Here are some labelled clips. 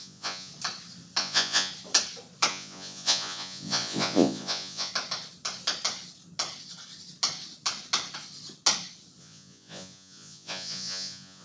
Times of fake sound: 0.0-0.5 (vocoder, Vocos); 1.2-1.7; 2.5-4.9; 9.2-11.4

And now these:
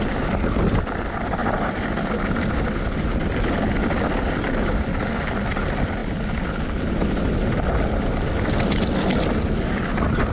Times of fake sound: none

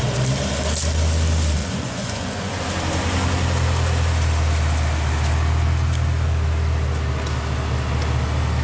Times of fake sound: 1.6-2.6 (vocoder, Vocos)